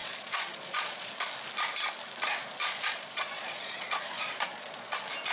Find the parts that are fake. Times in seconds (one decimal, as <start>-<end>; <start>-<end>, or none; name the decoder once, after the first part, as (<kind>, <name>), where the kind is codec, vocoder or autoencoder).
0.0-1.1 (vocoder, Vocos); 2.6-4.8